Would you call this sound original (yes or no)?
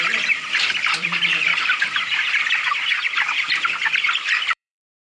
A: no